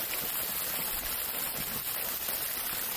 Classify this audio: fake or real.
real